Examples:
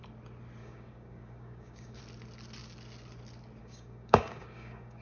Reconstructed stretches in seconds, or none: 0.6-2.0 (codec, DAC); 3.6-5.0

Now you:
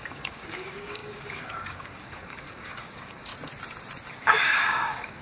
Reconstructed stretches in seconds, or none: 0.0-3.3 (codec, DAC); 4.1-5.2

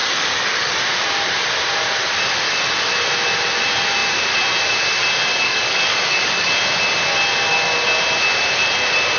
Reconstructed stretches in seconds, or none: 0.0-0.8 (codec, DAC); 5.3-6.5

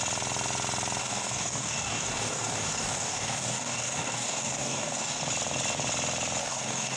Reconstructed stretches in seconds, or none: 1.0-5.2 (codec, DAC); 6.4-7.0